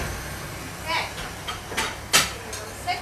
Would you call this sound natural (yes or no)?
yes